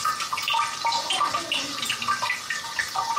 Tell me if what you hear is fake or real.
real